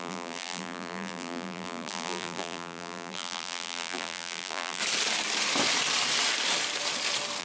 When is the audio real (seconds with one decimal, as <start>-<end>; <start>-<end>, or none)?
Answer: 4.8-7.4